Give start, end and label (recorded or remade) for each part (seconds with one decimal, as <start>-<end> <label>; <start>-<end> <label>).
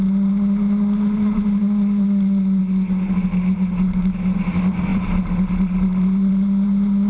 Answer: 0.0-4.9 recorded; 4.9-6.3 remade; 6.3-7.1 recorded